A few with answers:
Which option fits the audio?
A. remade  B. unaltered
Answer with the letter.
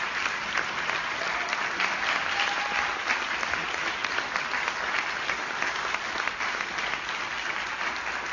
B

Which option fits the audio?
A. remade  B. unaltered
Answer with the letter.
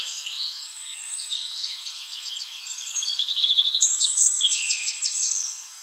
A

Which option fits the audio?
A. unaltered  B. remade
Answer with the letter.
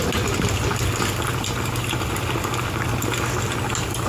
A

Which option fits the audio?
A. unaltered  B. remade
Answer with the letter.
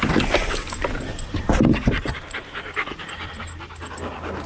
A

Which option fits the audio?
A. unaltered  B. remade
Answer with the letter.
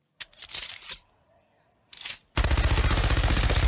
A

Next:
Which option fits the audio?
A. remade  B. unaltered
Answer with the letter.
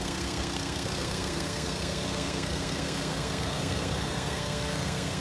A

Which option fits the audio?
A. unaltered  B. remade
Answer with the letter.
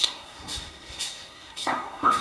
B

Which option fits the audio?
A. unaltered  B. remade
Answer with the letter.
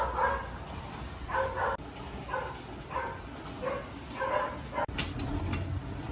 A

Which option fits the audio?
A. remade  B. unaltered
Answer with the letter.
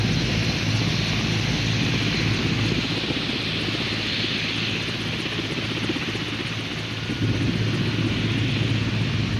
B